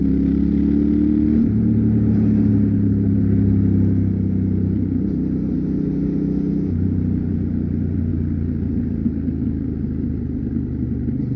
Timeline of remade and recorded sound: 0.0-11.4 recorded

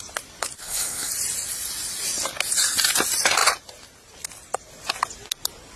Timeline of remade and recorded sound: 0.0-0.6 recorded; 0.6-1.1 remade; 1.1-5.8 recorded

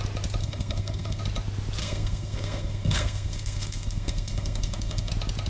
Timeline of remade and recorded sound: 0.0-0.4 recorded; 0.4-1.2 remade; 1.2-1.8 recorded; 1.8-5.1 remade; 5.1-5.5 recorded

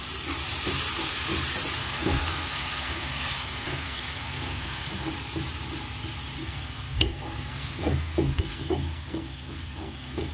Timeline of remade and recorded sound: 0.0-1.8 recorded; 1.8-5.1 remade; 5.1-6.4 recorded; 6.4-10.3 remade